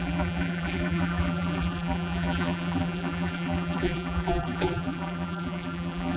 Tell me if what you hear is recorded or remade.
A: remade